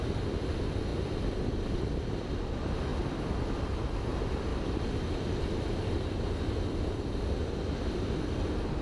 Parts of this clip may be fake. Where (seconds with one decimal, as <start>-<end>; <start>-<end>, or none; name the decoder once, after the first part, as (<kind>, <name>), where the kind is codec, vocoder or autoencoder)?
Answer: 0.9-2.4 (vocoder, BigVGAN v2); 2.9-3.6; 4.5-8.4